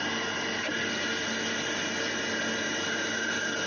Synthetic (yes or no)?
no